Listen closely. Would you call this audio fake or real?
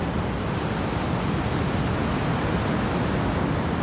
real